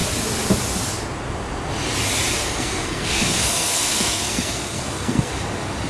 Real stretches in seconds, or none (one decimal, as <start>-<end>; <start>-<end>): 0.0-2.3; 5.3-5.9